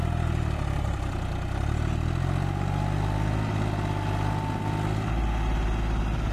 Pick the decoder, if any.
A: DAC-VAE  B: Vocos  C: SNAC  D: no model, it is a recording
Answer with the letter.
D